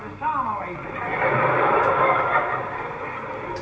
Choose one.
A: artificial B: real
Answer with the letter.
B